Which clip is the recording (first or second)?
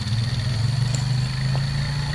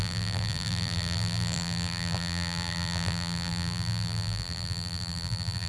first